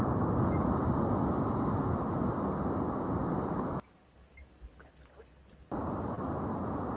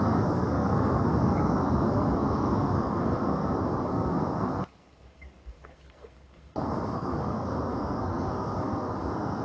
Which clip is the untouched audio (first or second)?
first